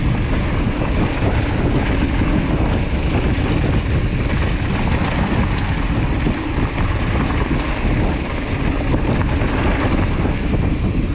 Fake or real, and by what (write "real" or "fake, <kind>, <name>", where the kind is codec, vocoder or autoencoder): real